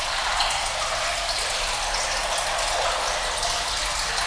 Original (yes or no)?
yes